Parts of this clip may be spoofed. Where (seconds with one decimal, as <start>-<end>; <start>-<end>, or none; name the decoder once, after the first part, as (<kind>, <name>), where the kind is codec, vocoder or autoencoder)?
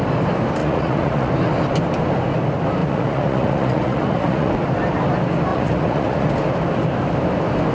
0.6-1.3 (vocoder, Vocos); 2.8-4.5; 5.5-6.3